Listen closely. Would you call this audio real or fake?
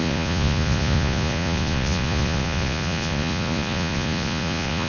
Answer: fake